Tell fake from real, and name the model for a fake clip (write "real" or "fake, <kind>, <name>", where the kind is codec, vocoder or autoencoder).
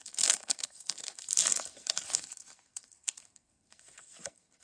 fake, codec, SNAC